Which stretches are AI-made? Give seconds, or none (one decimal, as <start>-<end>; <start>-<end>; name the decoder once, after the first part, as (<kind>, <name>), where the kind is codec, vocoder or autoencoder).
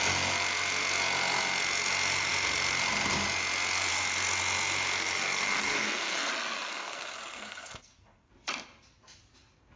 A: 5.0-6.3 (codec, SNAC); 6.7-8.3